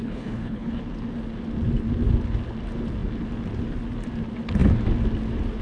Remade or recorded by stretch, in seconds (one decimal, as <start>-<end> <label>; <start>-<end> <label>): 0.0-0.8 remade; 0.8-5.6 recorded